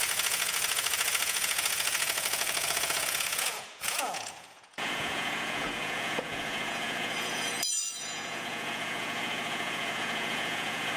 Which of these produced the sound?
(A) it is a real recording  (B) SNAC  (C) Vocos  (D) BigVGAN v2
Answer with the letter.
C